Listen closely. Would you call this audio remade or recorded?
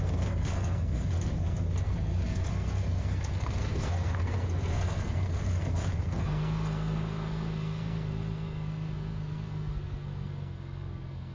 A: remade